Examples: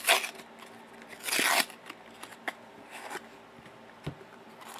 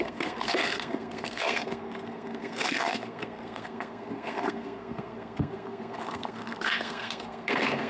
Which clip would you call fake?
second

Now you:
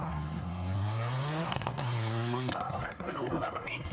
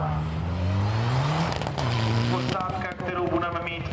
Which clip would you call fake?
first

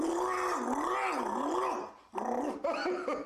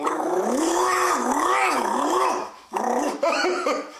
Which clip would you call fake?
second